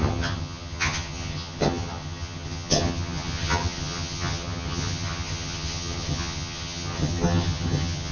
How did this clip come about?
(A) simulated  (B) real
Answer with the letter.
A